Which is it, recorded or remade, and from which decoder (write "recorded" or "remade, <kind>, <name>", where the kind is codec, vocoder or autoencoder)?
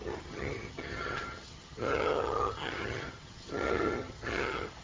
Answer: remade, vocoder, HiFi-GAN